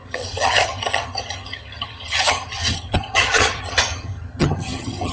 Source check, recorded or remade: remade